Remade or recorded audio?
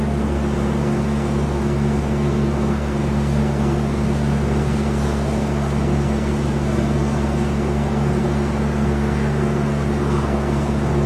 remade